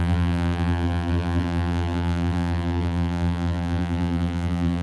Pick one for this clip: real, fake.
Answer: fake